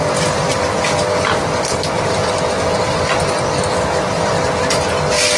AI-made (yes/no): no